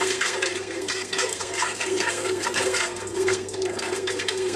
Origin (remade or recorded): remade